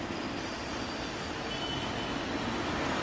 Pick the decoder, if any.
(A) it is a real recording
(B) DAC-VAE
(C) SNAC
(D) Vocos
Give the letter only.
A